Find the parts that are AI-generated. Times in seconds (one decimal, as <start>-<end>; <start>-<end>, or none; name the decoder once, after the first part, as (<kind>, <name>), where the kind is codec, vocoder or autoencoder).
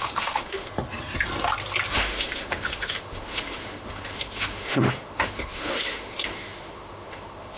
0.0-0.7 (autoencoder, DAC-VAE); 1.9-7.6